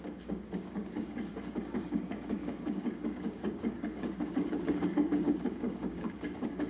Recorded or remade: remade